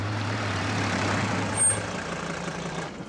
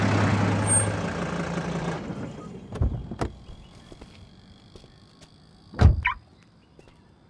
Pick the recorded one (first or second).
second